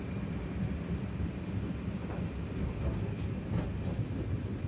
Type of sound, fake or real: real